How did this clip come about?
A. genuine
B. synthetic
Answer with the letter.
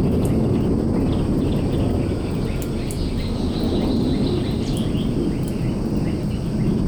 A